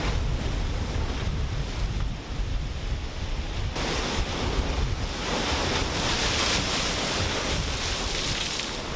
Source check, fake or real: real